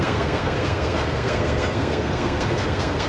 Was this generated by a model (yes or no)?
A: yes